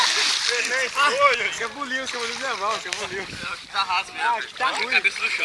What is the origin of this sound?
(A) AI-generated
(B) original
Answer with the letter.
B